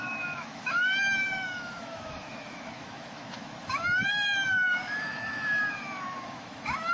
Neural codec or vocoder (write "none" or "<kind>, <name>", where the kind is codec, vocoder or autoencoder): autoencoder, DAC-VAE